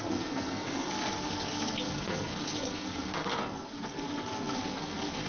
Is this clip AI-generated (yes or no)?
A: yes